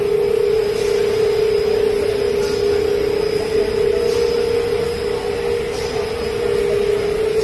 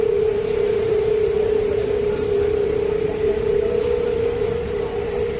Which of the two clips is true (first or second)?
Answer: first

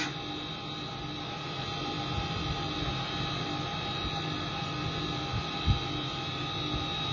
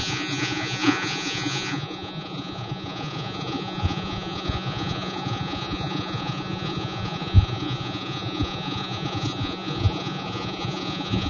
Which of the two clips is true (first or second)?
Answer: first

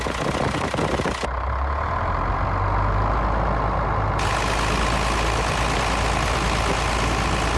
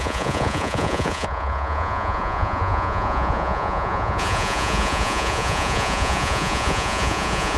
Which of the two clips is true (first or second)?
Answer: first